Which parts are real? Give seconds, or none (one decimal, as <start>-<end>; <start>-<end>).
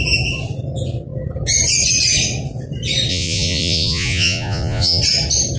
0.0-3.1; 5.0-5.6